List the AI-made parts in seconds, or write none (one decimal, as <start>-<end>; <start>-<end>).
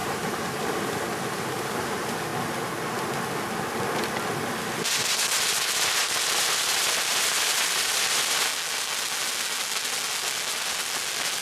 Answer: 0.0-2.3; 5.4-8.5